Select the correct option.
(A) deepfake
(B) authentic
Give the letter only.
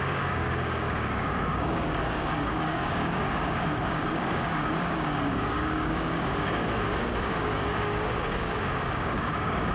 A